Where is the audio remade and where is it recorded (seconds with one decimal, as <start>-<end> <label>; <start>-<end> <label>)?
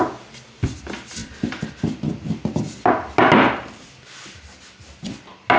0.0-5.6 recorded